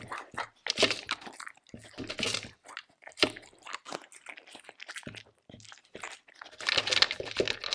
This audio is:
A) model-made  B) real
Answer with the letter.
B